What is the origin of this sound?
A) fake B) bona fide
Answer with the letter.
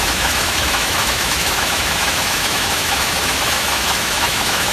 A